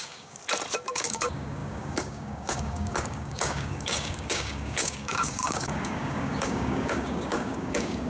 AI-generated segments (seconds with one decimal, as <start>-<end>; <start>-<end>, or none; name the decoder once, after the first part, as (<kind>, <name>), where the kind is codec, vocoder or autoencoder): 0.0-0.4 (codec, DAC); 0.9-8.1